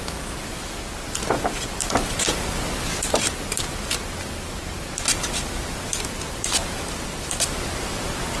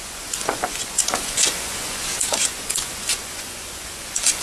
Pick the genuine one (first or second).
first